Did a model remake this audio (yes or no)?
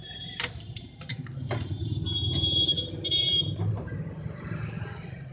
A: yes